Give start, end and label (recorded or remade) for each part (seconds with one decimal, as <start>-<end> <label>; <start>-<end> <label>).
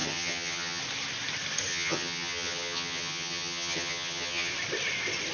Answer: 0.0-0.8 remade; 0.8-1.7 recorded; 1.7-4.5 remade; 4.5-5.3 recorded